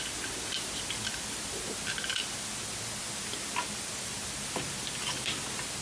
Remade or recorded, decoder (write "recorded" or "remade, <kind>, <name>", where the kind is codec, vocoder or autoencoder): recorded